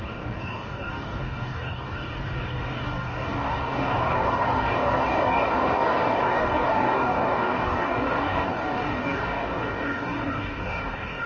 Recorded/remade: remade